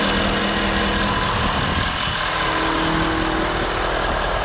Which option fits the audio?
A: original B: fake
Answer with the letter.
A